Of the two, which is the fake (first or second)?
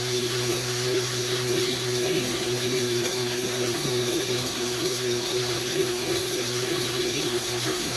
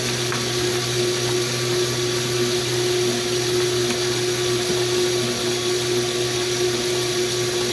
first